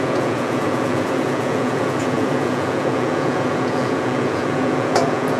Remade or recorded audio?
remade